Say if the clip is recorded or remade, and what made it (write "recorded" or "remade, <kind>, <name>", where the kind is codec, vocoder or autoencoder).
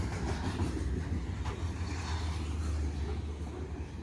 recorded